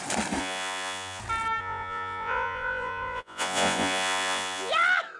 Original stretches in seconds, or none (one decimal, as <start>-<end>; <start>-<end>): 0.0-0.4; 1.2-1.6; 4.7-5.2